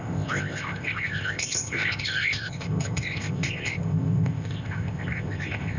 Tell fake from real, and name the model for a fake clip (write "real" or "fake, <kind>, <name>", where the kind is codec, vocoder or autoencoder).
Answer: fake, codec, ZipCodec